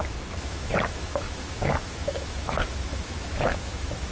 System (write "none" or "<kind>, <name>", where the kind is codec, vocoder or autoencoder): autoencoder, DAC-VAE